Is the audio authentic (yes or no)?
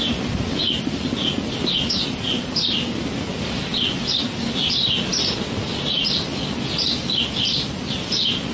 yes